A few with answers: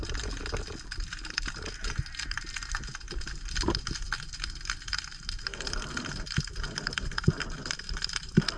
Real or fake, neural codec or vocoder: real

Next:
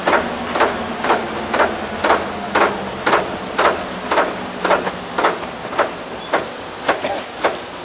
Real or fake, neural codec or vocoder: real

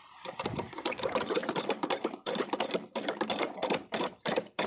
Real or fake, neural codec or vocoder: fake, vocoder, BigVGAN v2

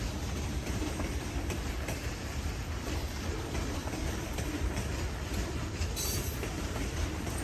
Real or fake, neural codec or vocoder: fake, vocoder, BigVGAN v2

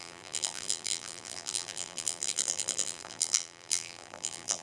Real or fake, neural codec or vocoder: fake, vocoder, BigVGAN v2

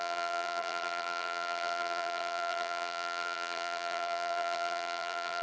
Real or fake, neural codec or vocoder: fake, vocoder, BigVGAN v2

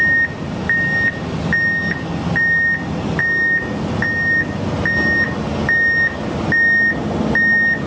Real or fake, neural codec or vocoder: real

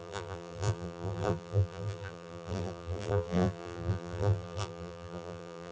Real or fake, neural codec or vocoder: fake, vocoder, BigVGAN v2